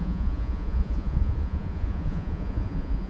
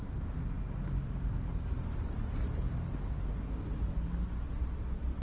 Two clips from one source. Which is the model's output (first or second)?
first